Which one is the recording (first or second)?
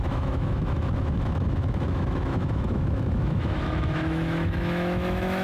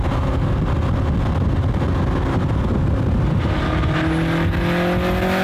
second